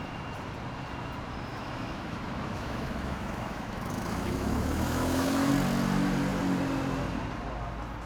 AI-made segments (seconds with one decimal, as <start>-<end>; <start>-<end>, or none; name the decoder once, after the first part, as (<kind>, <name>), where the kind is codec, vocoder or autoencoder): 1.5-5.5 (autoencoder, DAC-VAE)